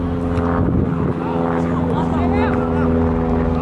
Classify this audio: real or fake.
real